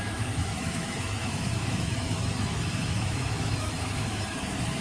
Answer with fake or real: fake